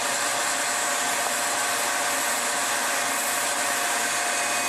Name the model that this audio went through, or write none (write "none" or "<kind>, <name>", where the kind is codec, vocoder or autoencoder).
none